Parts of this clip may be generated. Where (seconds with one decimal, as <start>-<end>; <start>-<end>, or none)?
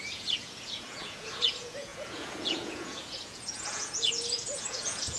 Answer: 0.0-5.2